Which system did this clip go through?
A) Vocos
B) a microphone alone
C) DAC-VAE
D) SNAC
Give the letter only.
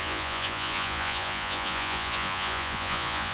A